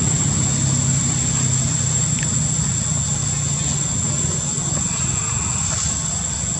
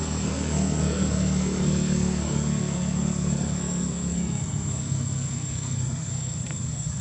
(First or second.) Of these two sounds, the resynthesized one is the second